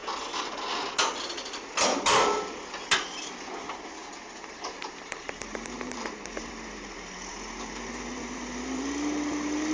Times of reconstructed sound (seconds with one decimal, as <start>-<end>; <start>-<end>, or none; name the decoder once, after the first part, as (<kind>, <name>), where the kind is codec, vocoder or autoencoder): 4.0-8.9 (vocoder, BigVGAN v2)